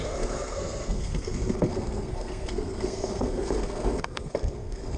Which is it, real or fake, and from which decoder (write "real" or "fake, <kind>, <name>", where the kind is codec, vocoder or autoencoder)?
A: fake, codec, SNAC